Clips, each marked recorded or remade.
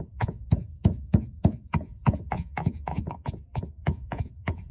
remade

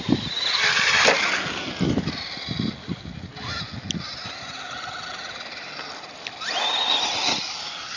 recorded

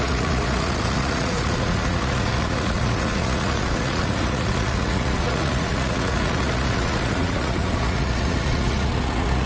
remade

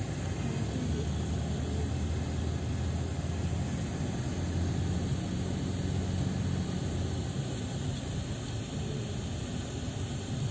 recorded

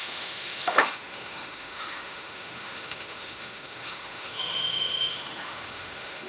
remade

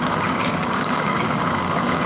remade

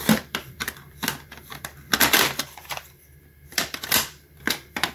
remade